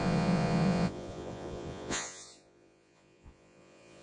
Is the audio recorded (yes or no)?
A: no